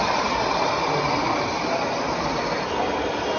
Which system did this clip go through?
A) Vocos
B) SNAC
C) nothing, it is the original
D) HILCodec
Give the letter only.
C